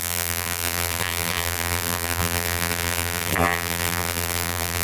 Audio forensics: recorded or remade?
remade